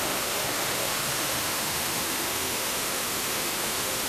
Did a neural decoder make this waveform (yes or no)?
yes